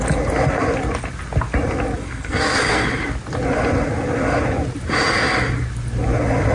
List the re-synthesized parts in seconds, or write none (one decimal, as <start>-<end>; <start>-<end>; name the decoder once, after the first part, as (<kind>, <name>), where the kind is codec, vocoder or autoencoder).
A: 2.0-2.9 (codec, SNAC)